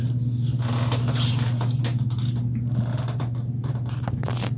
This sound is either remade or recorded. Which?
recorded